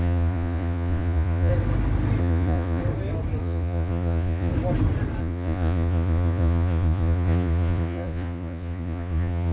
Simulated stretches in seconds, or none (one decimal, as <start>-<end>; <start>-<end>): 0.0-1.5; 2.2-2.8; 3.4-4.5; 5.2-9.5